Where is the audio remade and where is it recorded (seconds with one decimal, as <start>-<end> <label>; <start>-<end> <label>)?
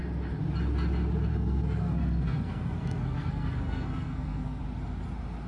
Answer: 0.0-1.3 recorded; 1.3-4.6 remade; 4.6-5.5 recorded